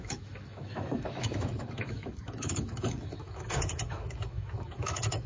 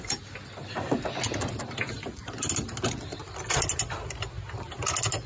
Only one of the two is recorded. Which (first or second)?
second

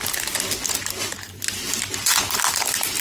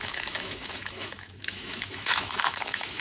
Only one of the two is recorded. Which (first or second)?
first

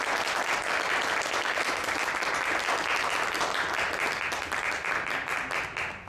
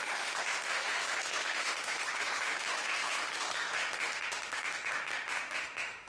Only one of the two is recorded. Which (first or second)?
first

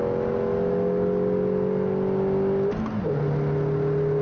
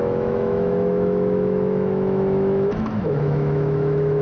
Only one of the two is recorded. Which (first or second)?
first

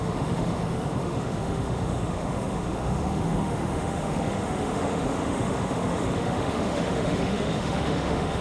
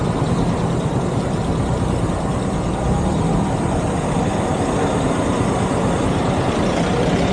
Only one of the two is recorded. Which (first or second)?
second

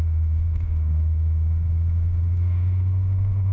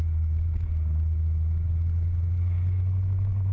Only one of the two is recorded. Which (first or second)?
second